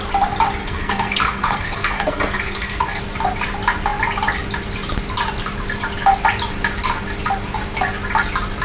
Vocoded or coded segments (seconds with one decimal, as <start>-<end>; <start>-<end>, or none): 0.6-3.0